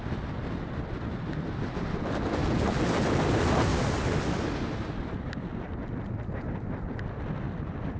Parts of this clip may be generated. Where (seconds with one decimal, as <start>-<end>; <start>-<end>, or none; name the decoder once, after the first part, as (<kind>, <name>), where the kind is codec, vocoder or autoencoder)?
none